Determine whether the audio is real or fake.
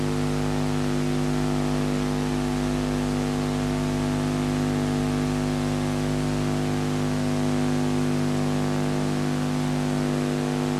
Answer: real